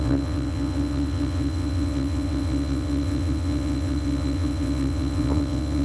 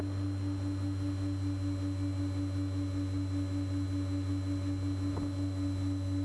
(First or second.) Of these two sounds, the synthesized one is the first